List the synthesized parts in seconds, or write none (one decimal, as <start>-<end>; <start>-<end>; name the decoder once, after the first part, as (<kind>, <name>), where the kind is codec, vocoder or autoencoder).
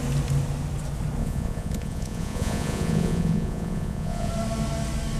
1.2-4.3 (vocoder, Vocos)